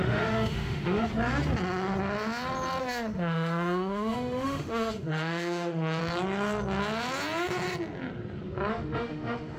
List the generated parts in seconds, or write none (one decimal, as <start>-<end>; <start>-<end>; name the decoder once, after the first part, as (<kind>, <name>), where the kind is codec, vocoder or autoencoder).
0.0-1.1 (autoencoder, DAC-VAE); 2.8-6.0; 8.7-9.6

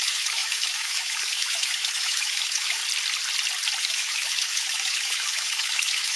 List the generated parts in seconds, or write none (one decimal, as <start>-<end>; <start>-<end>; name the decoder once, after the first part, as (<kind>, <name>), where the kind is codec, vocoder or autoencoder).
0.0-2.8 (autoencoder, DAC-VAE); 3.8-6.2

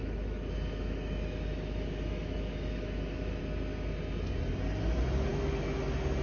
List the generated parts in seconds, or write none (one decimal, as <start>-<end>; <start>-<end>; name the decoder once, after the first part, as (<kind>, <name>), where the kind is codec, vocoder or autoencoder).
0.0-3.4 (autoencoder, DAC-VAE); 5.3-5.8

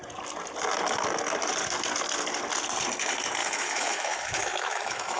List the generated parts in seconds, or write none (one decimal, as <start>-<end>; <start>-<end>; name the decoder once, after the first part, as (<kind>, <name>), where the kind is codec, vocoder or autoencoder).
3.4-5.2 (autoencoder, DAC-VAE)

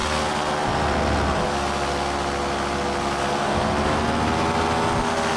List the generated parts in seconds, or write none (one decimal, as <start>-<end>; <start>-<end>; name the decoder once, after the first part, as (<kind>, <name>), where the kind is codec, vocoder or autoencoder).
none

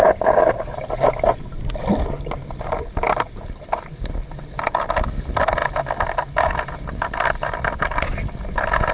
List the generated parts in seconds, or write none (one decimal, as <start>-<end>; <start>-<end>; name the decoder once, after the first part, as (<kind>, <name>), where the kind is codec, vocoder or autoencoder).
none

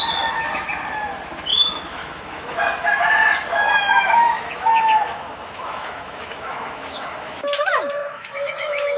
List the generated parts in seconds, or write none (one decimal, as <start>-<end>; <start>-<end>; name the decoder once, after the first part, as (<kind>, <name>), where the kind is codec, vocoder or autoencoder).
1.5-2.6 (autoencoder, DAC-VAE); 3.9-9.0